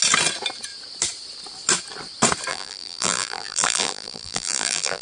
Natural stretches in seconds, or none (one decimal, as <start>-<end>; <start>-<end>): 0.0-2.5

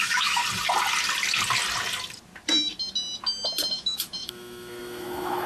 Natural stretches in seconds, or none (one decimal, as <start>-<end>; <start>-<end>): 0.4-3.7

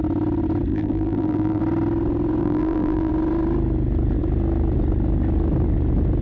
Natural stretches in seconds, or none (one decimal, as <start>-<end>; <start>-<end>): 0.0-0.7; 1.6-2.4; 3.1-6.2

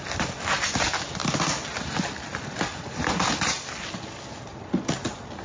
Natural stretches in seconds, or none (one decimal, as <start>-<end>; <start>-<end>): 0.0-1.2; 4.4-5.4